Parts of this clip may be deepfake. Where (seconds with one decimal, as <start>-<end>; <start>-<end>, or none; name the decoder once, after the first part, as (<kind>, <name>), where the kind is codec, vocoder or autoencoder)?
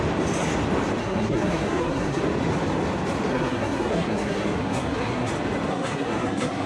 1.0-2.2 (codec, SNAC); 3.3-5.3; 5.7-6.7